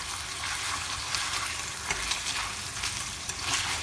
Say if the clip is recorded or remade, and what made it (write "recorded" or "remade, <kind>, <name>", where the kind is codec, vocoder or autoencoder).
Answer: recorded